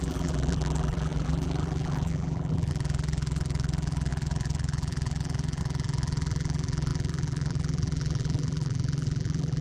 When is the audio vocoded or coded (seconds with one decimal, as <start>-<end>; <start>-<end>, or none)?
0.0-9.6